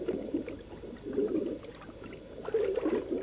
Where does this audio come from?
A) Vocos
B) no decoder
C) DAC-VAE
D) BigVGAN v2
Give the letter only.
B